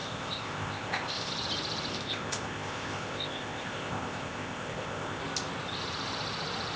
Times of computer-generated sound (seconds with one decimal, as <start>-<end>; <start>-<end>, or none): 0.0-1.3; 1.9-5.2